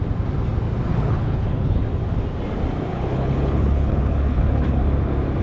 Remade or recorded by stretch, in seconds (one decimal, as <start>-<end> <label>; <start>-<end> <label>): 0.0-0.9 recorded; 0.9-1.8 remade; 1.8-2.9 recorded; 2.9-4.8 remade; 4.8-5.4 recorded